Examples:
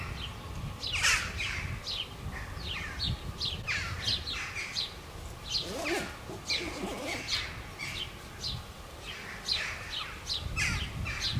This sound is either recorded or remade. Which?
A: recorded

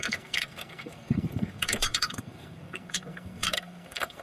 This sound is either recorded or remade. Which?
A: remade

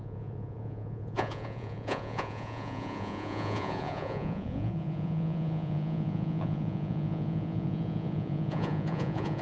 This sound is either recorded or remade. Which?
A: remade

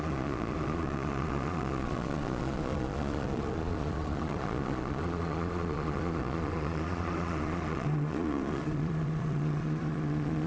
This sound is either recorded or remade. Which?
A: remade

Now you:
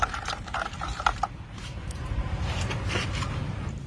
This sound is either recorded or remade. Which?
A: remade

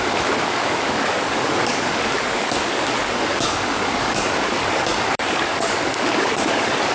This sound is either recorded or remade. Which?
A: remade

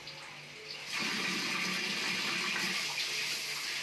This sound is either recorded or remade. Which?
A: recorded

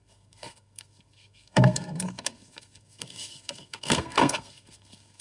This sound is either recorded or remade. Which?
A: remade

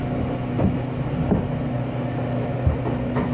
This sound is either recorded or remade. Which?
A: recorded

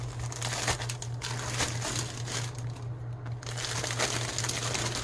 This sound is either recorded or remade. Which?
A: recorded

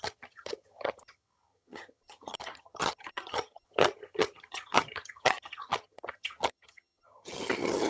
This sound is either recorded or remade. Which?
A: remade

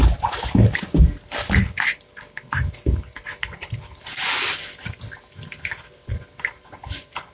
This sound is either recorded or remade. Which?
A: recorded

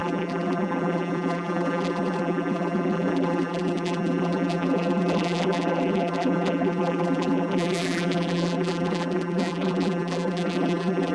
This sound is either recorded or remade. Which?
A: remade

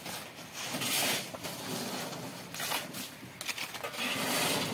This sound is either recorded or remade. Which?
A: recorded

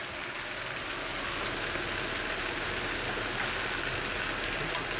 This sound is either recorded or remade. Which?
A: recorded